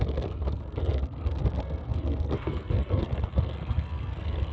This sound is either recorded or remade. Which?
remade